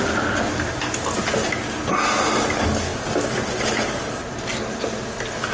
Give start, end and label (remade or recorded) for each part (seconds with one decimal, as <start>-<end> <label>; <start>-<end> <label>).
0.0-5.5 recorded